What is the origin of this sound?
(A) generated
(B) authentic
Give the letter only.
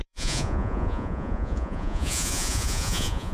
A